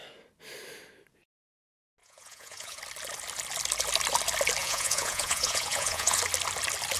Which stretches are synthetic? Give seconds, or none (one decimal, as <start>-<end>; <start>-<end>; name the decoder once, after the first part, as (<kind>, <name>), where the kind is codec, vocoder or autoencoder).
2.0-2.8 (vocoder, Vocos); 4.6-6.2